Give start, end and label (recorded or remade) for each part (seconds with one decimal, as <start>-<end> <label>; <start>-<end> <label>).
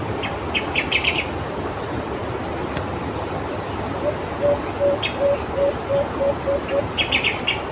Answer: 0.0-7.7 recorded